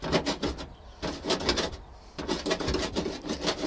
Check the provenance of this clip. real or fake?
real